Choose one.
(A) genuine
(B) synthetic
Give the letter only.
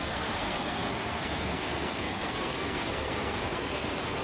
B